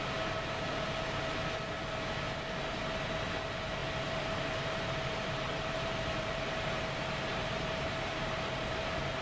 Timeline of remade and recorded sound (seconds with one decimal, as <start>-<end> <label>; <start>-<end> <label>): 0.0-3.8 recorded; 3.8-8.6 remade; 8.6-9.2 recorded